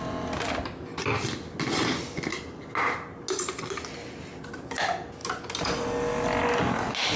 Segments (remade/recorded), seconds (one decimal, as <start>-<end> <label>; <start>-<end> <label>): 0.0-7.2 recorded